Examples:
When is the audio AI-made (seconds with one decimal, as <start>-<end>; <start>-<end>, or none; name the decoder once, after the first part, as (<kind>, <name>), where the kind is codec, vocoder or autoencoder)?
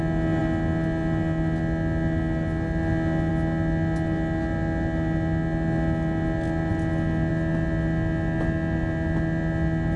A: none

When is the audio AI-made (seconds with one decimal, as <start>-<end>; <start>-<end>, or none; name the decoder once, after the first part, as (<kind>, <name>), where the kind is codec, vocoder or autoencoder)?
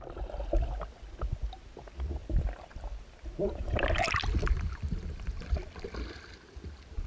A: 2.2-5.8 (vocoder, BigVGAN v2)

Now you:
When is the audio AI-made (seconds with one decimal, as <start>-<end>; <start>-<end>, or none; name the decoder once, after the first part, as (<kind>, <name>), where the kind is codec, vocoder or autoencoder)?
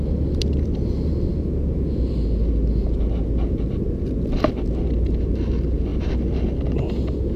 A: none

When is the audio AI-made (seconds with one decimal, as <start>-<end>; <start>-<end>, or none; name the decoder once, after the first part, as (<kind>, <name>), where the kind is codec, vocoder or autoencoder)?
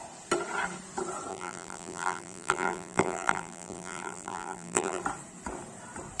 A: 1.3-5.0 (vocoder, BigVGAN v2)